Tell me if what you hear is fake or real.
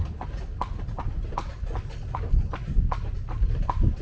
real